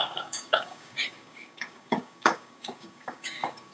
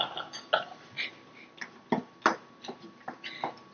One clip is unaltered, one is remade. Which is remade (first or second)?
first